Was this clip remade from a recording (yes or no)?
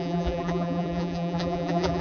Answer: yes